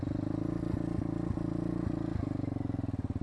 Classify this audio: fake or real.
real